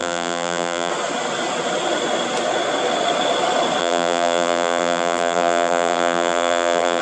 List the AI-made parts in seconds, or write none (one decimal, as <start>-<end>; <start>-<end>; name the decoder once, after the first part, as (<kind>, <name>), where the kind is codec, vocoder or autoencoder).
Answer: 0.0-0.9 (vocoder, BigVGAN v2); 3.8-7.0